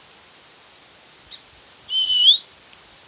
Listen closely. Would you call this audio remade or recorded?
recorded